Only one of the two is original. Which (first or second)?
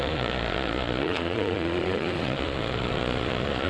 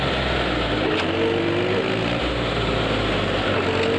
second